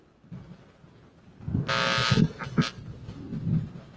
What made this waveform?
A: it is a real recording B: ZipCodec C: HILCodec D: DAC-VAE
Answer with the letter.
A